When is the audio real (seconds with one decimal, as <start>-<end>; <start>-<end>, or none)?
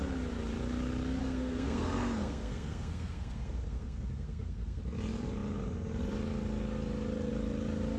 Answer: 0.0-1.2; 4.8-8.0